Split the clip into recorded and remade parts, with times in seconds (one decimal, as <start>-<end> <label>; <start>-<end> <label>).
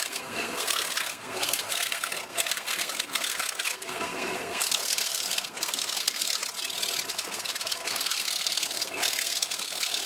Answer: 0.0-6.4 remade; 6.4-7.1 recorded; 7.1-10.1 remade